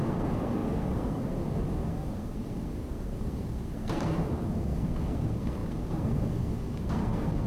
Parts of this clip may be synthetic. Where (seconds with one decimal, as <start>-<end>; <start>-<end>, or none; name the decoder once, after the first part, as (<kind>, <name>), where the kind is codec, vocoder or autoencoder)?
0.0-7.5 (codec, SNAC)